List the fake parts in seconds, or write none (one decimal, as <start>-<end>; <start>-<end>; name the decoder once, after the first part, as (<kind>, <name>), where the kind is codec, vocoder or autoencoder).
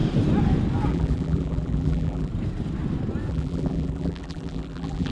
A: 0.9-2.3 (vocoder, BigVGAN v2); 3.3-5.1